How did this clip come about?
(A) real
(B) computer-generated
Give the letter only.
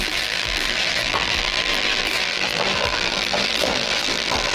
B